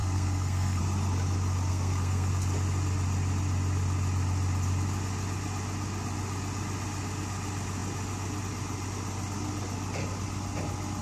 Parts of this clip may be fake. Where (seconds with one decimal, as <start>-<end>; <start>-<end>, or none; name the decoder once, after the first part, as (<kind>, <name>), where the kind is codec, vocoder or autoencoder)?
0.0-0.8 (codec, SNAC); 1.7-2.3